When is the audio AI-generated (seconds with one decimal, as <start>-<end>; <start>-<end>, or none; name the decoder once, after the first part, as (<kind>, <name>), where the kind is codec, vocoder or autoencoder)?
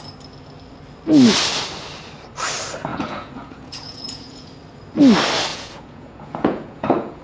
2.9-4.5 (vocoder, Vocos); 5.5-7.2